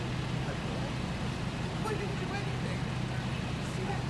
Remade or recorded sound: recorded